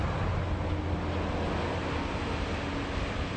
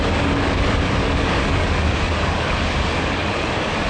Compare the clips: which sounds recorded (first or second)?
first